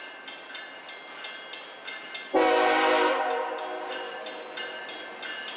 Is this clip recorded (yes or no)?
yes